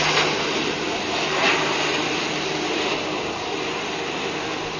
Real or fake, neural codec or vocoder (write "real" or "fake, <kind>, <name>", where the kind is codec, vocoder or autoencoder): real